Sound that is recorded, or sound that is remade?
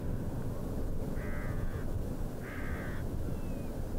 recorded